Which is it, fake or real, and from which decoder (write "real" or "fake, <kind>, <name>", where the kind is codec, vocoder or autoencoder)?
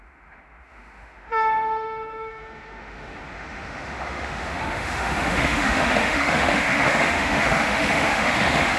fake, autoencoder, DAC-VAE